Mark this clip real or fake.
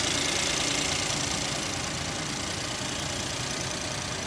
real